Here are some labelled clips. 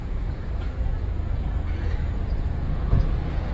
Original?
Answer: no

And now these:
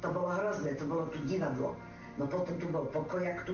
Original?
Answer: yes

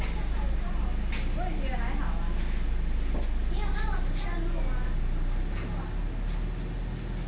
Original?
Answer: yes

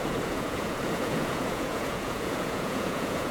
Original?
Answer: no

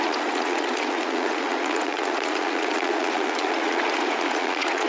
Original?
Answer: no